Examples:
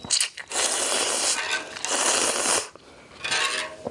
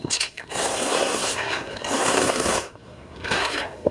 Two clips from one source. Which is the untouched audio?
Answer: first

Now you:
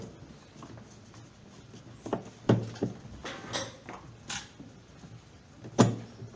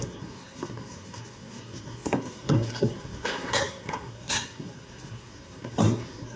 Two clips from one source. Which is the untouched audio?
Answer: first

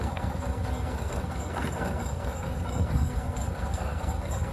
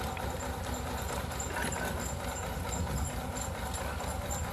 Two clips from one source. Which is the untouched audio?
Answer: second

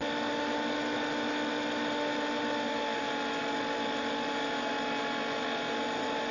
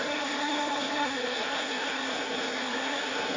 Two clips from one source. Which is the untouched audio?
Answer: first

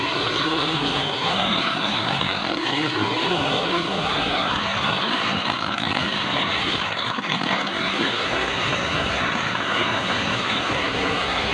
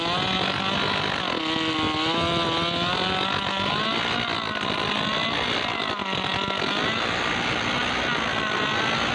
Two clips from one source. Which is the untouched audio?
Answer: second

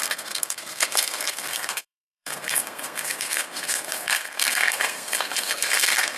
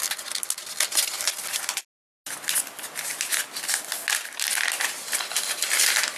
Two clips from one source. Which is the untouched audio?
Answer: second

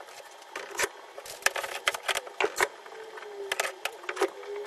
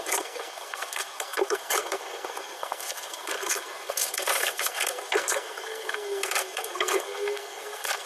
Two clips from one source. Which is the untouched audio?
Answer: first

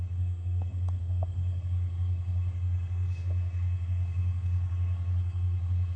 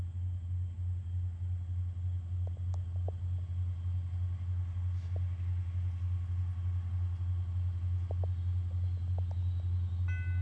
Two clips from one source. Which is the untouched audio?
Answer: second